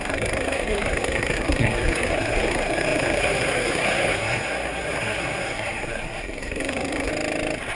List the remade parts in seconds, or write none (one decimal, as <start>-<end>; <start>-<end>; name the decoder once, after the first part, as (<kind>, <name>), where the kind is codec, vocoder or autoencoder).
0.0-7.1 (codec, SNAC)

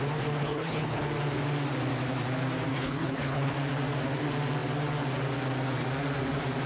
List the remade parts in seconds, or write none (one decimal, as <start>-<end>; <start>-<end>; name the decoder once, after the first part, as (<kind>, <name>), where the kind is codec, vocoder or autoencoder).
0.4-1.0 (codec, HILCodec); 2.7-3.5

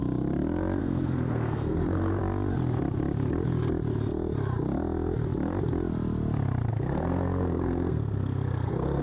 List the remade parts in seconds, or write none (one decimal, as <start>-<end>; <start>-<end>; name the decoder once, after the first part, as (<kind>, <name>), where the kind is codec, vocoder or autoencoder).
0.8-2.2 (codec, SNAC); 6.7-9.0